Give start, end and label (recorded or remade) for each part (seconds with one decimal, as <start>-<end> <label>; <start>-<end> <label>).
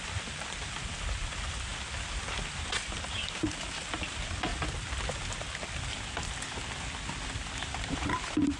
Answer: 0.0-1.7 remade; 1.7-2.6 recorded; 2.6-4.5 remade; 4.5-7.8 recorded; 7.8-8.6 remade